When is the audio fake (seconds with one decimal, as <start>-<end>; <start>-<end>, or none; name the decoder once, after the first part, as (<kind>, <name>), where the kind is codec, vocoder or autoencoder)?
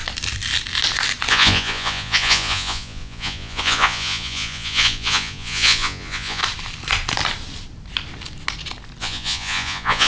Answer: 1.3-6.4 (vocoder, Vocos); 9.0-10.1